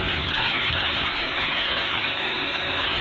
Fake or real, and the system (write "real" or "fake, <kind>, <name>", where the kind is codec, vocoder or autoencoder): fake, codec, SNAC